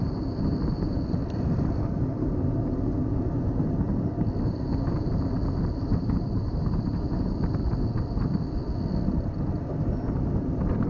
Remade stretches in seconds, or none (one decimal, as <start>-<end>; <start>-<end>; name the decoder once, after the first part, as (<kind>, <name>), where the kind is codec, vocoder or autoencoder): 5.9-7.3 (vocoder, BigVGAN v2)